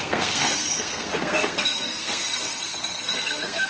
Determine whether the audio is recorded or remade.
remade